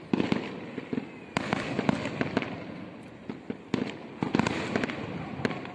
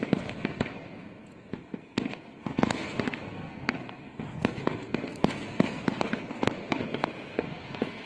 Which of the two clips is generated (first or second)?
second